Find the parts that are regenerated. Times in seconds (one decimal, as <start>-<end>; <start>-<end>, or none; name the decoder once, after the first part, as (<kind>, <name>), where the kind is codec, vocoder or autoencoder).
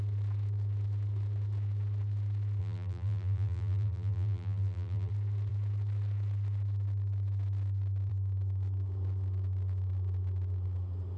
2.6-5.1 (vocoder, BigVGAN v2)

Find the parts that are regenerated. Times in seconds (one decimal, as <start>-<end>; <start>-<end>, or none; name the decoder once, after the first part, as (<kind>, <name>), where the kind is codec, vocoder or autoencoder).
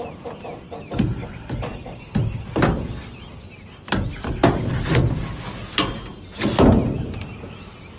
none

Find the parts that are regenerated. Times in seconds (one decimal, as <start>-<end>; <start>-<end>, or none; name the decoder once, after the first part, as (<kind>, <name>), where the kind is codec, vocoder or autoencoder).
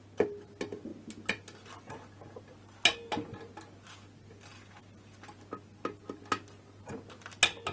none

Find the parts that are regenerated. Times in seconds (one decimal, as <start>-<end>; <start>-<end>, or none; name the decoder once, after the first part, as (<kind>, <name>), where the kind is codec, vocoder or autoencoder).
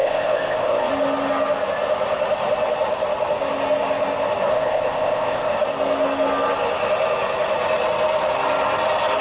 0.0-0.9 (codec, ZipCodec); 4.5-5.5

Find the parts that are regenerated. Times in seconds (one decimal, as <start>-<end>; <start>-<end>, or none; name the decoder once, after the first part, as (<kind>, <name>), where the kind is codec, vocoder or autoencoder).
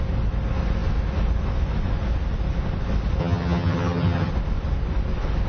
3.2-4.3 (vocoder, HiFi-GAN)